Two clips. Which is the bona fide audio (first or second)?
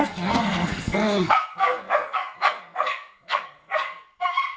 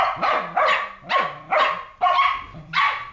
second